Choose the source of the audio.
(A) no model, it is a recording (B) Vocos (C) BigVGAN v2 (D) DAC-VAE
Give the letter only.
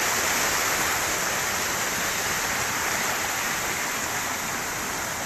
A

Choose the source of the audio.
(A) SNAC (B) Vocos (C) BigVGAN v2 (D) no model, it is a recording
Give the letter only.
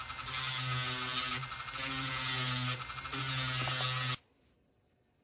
D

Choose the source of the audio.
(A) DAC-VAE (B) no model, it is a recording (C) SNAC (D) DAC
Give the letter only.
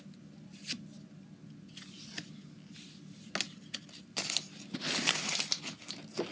B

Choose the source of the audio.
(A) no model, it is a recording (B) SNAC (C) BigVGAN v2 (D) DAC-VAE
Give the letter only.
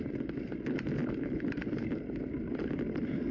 A